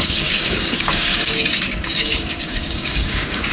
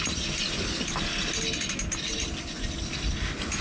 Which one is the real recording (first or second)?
second